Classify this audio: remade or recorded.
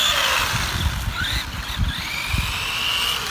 recorded